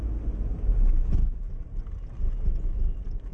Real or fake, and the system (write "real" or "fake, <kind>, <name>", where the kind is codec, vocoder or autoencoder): real